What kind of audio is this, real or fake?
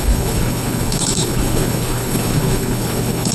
fake